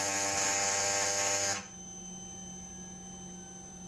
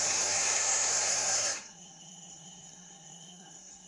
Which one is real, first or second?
first